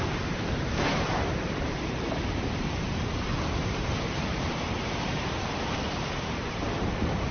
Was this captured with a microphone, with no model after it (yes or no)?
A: no